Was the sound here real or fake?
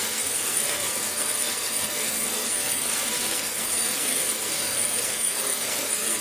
fake